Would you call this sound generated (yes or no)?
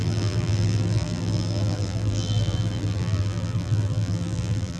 yes